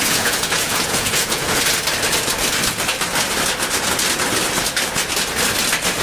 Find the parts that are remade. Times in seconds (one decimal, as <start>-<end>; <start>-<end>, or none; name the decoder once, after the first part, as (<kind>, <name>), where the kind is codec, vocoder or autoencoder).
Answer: 0.0-1.6 (vocoder, Vocos)